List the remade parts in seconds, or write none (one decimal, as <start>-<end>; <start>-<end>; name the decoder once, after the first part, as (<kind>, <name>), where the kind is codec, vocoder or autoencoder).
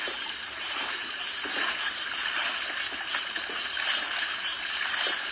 0.0-2.4 (vocoder, BigVGAN v2); 3.5-5.3